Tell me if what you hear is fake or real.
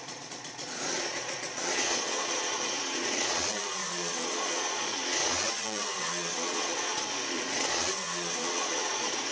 fake